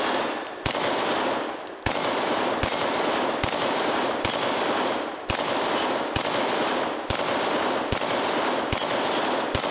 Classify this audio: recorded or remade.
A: recorded